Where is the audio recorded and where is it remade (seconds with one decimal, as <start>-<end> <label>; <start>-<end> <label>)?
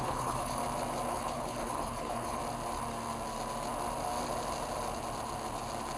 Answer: 0.0-0.6 remade; 0.6-1.1 recorded; 1.1-2.4 remade; 2.4-6.0 recorded